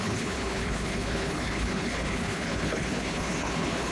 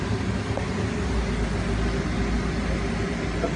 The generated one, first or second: first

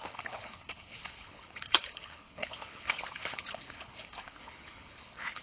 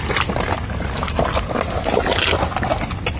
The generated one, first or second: first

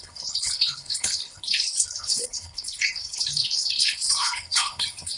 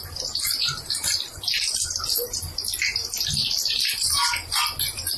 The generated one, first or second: first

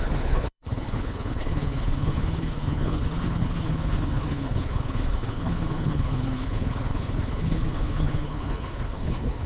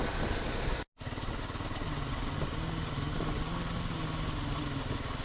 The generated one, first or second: first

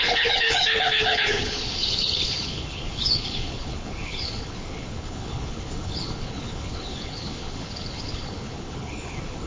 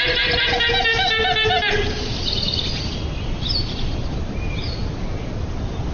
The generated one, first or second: first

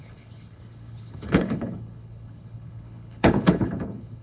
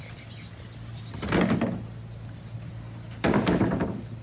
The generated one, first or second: first